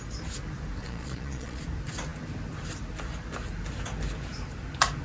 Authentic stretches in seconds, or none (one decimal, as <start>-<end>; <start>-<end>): 0.0-0.8; 1.6-5.0